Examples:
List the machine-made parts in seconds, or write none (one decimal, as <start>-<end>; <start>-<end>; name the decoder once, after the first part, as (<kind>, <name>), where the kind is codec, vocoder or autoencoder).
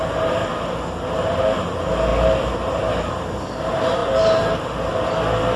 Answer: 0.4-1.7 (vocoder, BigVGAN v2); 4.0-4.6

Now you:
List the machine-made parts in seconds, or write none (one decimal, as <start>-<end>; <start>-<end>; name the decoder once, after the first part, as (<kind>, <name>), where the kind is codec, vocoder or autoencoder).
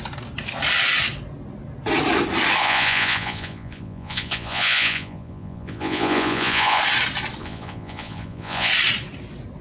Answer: 2.6-6.8 (vocoder, Vocos); 7.4-8.7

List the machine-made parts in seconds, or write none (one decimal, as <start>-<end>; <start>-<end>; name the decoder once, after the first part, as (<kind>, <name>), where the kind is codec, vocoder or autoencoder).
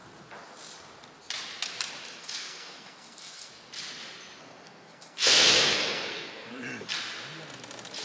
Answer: 2.2-3.5 (codec, SNAC); 4.4-6.5